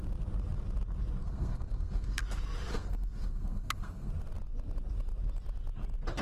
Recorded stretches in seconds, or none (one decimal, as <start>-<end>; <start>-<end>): 0.0-1.2; 2.2-2.7; 4.1-6.2